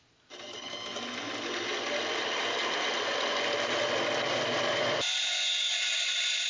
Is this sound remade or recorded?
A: recorded